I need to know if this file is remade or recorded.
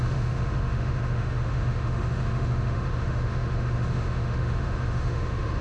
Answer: remade